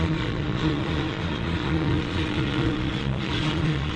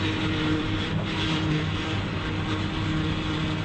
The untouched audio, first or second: second